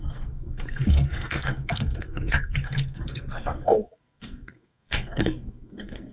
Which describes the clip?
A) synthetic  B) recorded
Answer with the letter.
A